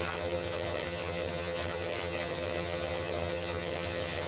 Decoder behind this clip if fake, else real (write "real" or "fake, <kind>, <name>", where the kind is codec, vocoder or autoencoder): fake, vocoder, HiFi-GAN